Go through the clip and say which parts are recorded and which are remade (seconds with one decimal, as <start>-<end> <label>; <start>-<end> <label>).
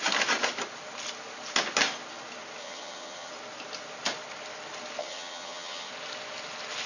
0.0-2.6 recorded; 2.6-3.3 remade; 3.3-5.0 recorded; 5.0-5.9 remade; 5.9-6.9 recorded